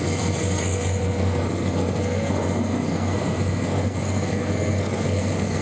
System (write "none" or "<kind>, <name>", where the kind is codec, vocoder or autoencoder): codec, SNAC